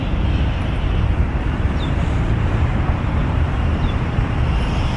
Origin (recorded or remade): remade